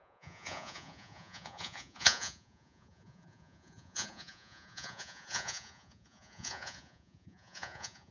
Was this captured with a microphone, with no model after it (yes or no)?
no